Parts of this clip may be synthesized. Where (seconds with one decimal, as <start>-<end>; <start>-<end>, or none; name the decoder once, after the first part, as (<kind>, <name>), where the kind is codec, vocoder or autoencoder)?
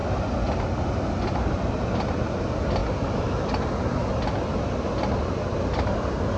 none